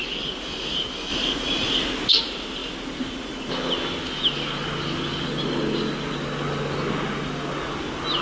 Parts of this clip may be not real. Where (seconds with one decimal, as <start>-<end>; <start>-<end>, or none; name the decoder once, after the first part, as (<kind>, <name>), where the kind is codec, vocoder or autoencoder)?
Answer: none